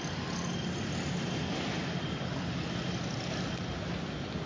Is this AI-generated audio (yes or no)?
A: no